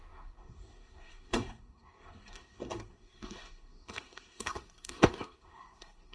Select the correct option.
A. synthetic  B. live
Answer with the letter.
A